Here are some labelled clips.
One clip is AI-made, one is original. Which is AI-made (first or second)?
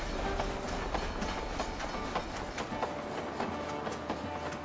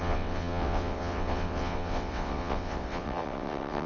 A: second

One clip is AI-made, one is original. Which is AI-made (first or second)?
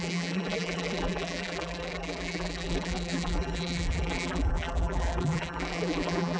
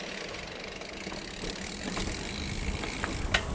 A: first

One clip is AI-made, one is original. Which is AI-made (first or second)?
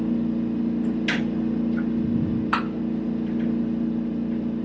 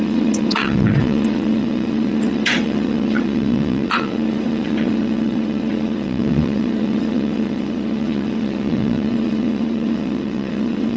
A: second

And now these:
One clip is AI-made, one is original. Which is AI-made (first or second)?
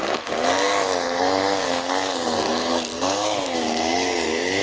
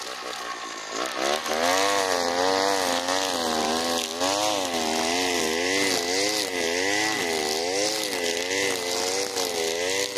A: first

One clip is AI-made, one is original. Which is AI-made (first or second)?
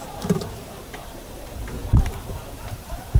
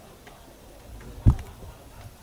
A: first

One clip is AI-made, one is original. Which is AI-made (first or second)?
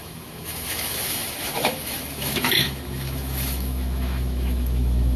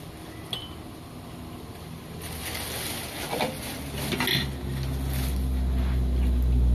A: first